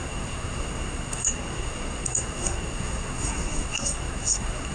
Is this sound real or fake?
fake